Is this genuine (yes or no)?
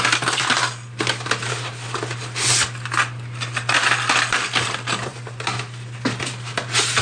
yes